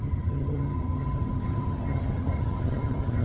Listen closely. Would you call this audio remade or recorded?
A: remade